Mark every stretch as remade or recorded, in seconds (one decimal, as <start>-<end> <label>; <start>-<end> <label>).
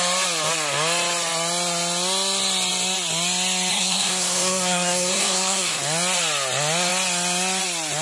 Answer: 0.0-3.7 recorded; 3.7-5.8 remade; 5.8-8.0 recorded